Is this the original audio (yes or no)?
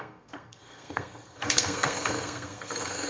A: no